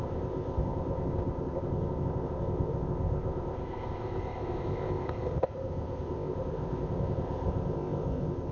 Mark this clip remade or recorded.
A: remade